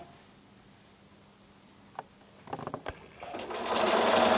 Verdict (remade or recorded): recorded